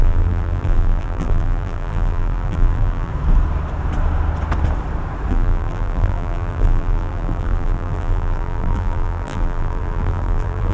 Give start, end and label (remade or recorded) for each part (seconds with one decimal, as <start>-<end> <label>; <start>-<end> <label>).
0.0-3.1 remade; 3.1-5.3 recorded; 5.3-10.7 remade